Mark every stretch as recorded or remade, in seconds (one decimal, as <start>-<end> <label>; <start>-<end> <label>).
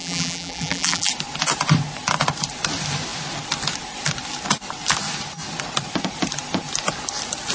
0.0-1.1 remade; 1.1-7.5 recorded